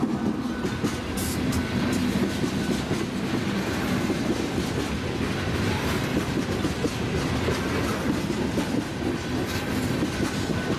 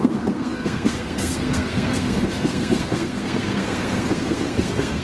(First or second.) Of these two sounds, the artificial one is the second